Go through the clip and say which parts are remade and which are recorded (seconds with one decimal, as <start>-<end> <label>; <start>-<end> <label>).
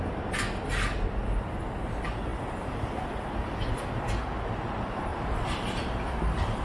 0.0-5.1 recorded; 5.1-6.0 remade; 6.0-6.6 recorded